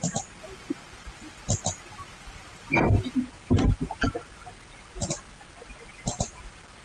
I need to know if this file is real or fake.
real